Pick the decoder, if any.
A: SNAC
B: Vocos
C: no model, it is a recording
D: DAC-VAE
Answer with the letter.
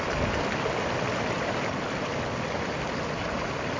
C